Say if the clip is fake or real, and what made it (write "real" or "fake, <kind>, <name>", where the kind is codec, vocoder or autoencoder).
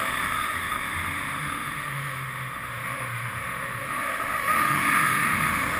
fake, autoencoder, DAC-VAE